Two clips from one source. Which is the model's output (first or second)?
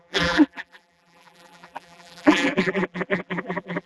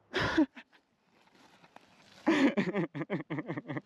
first